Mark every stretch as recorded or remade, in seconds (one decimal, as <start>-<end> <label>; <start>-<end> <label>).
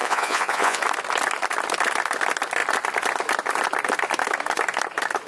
0.0-0.8 remade; 0.8-5.3 recorded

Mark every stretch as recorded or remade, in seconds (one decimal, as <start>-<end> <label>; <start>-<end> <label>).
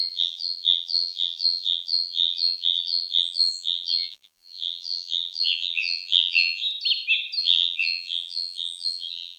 0.0-6.6 remade; 6.6-7.4 recorded; 7.4-9.4 remade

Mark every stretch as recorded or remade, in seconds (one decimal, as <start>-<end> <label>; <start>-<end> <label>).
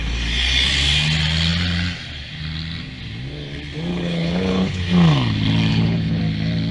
0.0-3.9 recorded; 3.9-4.8 remade; 4.8-5.7 recorded; 5.7-6.2 remade; 6.2-6.7 recorded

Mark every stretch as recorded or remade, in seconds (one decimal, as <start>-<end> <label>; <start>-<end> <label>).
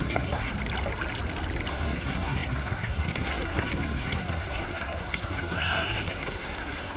0.0-0.5 remade; 0.5-1.7 recorded; 1.7-7.0 remade